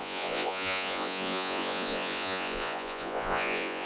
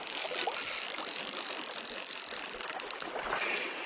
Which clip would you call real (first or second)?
second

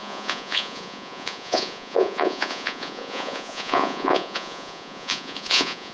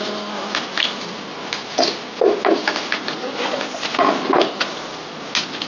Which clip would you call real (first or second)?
second